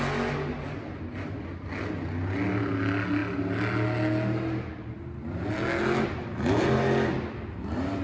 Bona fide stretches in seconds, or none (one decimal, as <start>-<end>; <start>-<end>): 0.0-8.0

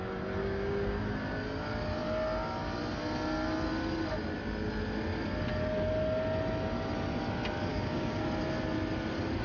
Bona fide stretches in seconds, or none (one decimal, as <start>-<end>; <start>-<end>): 0.0-0.4; 1.0-7.7; 8.2-9.4

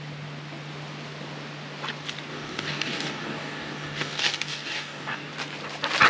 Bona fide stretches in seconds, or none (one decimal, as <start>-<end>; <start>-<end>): 0.0-2.3; 5.3-6.1

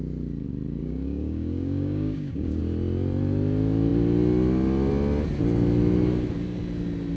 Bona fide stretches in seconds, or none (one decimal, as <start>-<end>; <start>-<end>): 0.0-0.8; 2.6-7.2

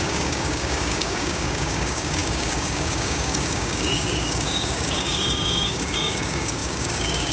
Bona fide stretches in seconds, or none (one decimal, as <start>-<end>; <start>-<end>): none